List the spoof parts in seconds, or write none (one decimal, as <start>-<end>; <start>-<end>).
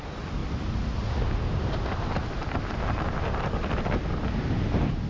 none